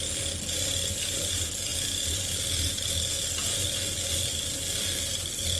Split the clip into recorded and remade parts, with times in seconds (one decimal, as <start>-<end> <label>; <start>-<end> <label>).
0.0-5.6 recorded